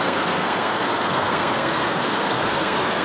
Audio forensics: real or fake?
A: fake